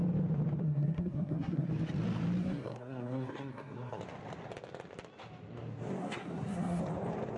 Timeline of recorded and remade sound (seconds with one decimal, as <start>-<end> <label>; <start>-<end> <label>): 0.0-0.6 recorded; 0.6-1.7 remade; 1.7-2.4 recorded; 2.4-4.0 remade; 4.0-6.0 recorded; 6.0-6.8 remade; 6.8-7.4 recorded